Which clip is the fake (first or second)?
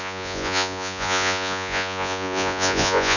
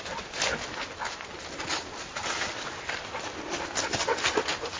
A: first